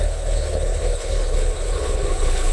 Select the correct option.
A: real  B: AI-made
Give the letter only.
B